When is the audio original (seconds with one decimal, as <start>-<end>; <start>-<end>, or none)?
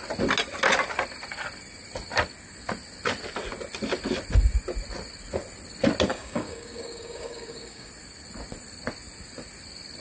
0.0-6.1; 7.9-10.0